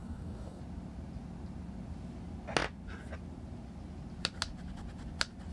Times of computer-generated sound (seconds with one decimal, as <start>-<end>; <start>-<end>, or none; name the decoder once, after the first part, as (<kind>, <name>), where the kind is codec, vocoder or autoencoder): 0.0-0.6 (codec, DAC)